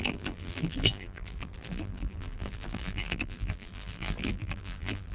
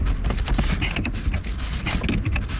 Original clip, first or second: second